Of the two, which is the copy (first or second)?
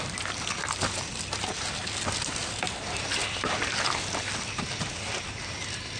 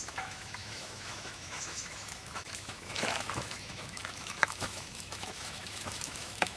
second